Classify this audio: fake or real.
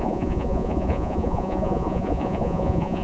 fake